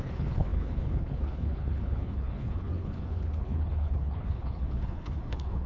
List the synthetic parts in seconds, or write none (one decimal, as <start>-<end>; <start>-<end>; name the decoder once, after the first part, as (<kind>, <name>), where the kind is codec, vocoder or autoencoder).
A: 0.0-5.7 (codec, HILCodec)